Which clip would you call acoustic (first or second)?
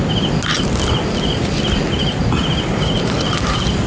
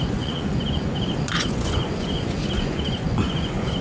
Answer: first